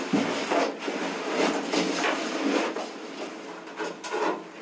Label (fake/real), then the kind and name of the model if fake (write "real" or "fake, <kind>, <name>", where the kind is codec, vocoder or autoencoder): real